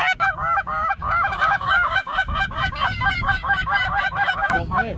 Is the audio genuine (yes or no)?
no